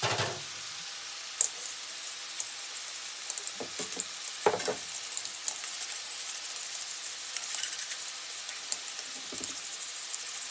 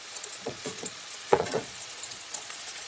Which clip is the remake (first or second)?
second